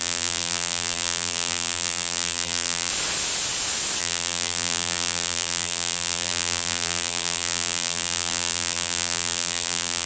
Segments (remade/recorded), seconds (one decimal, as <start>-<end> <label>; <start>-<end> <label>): 0.0-2.9 remade; 2.9-4.0 recorded; 4.0-10.1 remade